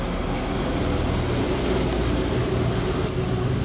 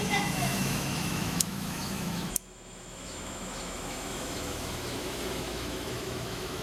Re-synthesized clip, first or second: second